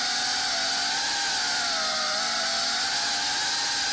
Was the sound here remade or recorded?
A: recorded